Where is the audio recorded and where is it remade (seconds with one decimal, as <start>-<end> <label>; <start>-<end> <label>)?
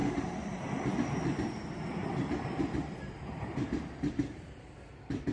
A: 0.0-0.7 remade; 0.7-2.0 recorded; 2.0-5.3 remade